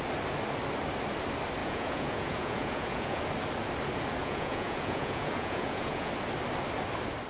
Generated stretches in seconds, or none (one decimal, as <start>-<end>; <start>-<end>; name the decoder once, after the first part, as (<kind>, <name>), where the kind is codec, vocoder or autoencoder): 1.6-3.2 (vocoder, Vocos); 4.2-6.1